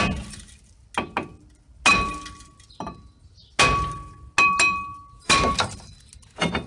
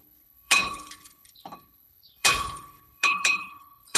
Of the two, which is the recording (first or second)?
first